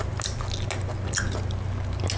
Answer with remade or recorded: recorded